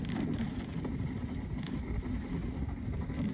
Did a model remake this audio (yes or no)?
no